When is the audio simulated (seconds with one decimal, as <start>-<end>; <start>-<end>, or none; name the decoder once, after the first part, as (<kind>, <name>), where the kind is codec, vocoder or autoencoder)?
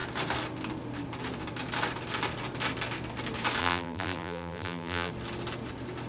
3.6-5.1 (vocoder, BigVGAN v2)